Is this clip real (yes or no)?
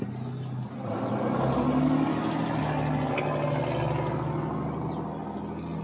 yes